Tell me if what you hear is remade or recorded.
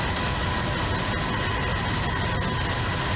recorded